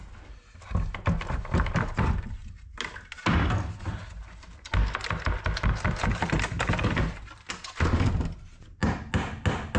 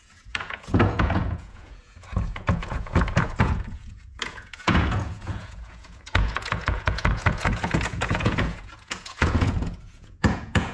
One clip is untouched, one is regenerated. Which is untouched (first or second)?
first